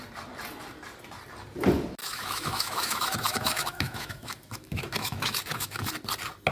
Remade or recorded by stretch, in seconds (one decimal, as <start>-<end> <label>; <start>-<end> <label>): 0.0-2.0 recorded; 2.0-5.9 remade; 5.9-6.5 recorded